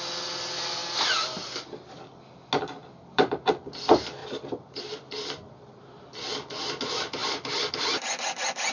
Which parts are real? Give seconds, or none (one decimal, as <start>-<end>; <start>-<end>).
0.0-2.8; 3.5-4.2; 5.8-7.2; 7.7-8.7